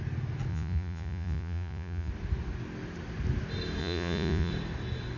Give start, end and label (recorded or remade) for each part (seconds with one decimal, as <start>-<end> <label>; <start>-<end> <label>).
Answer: 0.0-0.5 recorded; 0.5-2.1 remade; 2.1-3.8 recorded; 3.8-4.5 remade; 4.5-5.2 recorded